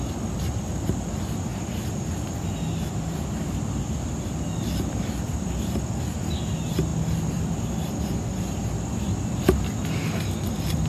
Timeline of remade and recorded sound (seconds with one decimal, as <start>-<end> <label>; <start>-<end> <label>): 0.0-10.9 recorded